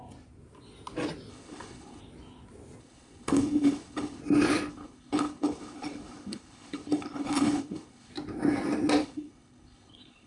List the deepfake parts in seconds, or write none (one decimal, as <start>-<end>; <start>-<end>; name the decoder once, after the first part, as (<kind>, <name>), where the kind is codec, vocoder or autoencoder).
1.3-2.0 (codec, HILCodec); 2.8-4.2; 4.7-8.1; 9.0-10.3